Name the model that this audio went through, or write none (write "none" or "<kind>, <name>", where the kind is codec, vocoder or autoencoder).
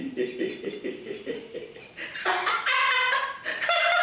none